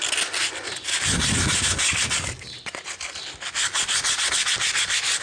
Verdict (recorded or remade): recorded